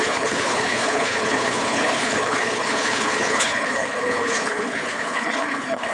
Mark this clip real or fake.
fake